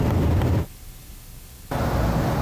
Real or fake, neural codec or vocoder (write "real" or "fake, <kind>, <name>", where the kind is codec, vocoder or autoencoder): real